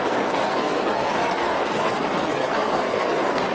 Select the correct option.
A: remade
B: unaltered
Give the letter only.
A